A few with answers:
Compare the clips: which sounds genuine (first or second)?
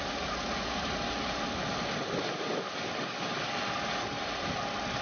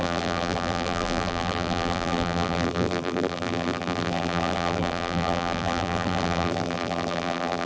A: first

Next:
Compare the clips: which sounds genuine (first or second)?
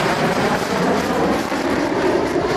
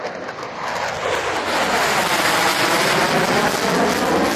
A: second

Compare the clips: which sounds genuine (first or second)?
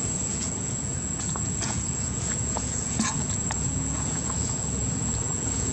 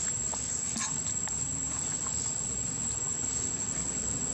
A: second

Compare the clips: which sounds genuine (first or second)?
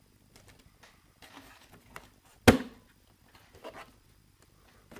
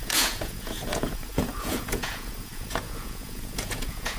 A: first